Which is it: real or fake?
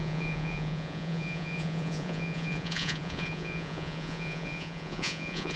fake